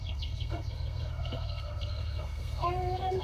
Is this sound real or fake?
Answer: fake